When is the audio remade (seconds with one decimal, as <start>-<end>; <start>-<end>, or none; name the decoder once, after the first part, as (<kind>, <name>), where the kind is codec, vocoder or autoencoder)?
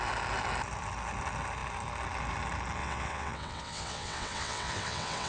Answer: 2.8-5.3 (vocoder, WaveNeXt)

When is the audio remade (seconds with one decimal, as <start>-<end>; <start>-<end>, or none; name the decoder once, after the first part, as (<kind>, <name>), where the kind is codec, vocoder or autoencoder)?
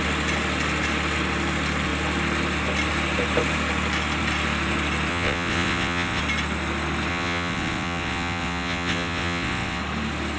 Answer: 5.1-6.2 (vocoder, WaveNeXt); 7.1-9.8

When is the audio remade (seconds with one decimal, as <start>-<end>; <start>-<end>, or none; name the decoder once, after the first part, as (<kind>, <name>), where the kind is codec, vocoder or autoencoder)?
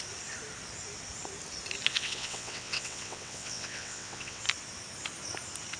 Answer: 1.9-4.4 (vocoder, WaveNeXt)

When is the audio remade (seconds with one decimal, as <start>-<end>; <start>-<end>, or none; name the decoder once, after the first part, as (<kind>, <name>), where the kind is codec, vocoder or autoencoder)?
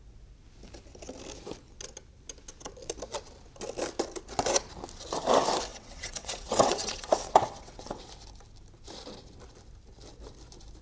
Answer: 5.7-8.1 (vocoder, WaveNeXt)